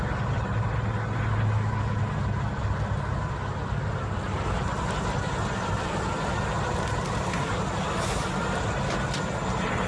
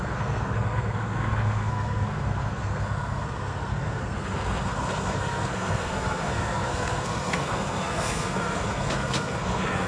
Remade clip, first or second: second